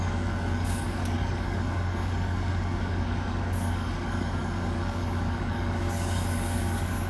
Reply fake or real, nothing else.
fake